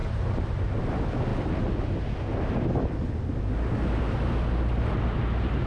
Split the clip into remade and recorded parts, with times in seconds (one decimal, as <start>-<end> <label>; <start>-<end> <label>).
0.0-5.7 recorded

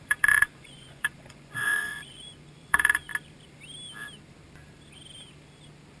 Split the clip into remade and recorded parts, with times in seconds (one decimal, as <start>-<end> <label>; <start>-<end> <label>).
0.0-3.1 remade; 3.1-6.0 recorded

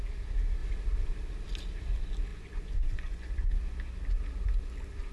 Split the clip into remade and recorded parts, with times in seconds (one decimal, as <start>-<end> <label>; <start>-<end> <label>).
0.0-2.3 recorded; 2.3-3.3 remade; 3.3-5.1 recorded